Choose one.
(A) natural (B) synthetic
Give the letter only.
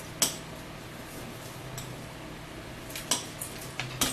A